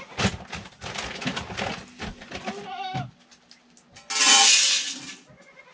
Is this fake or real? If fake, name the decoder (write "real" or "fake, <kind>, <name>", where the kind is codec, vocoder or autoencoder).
real